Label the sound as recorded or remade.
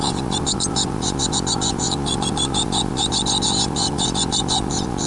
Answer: remade